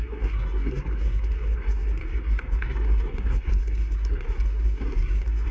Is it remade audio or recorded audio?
remade